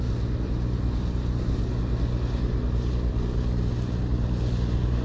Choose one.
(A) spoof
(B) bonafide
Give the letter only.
B